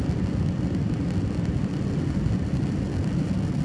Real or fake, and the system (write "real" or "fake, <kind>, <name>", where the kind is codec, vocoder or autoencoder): real